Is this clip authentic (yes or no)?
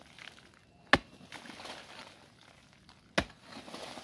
yes